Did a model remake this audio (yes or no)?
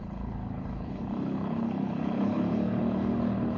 yes